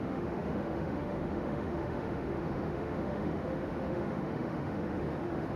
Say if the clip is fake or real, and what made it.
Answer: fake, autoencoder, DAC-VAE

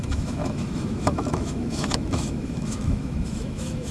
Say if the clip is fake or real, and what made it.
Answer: fake, autoencoder, DAC-VAE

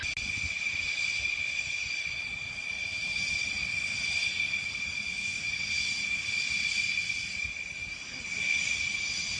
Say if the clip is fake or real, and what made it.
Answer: real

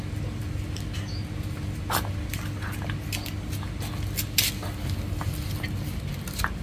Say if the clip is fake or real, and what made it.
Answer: real